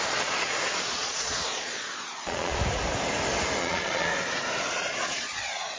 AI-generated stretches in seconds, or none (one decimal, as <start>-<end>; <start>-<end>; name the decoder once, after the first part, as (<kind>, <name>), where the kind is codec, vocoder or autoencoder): 0.0-2.6 (vocoder, Vocos); 3.6-4.1; 4.7-5.8